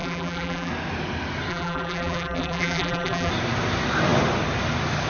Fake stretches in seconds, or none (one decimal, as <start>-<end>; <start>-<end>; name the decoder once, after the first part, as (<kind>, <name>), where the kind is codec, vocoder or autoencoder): 0.0-0.7 (vocoder, BigVGAN v2); 1.5-3.3